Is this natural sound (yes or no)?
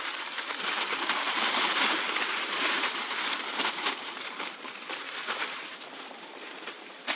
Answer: no